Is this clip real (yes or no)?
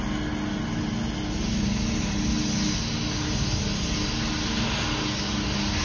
yes